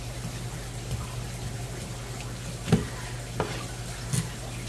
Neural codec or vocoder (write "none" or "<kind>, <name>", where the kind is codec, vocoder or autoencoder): none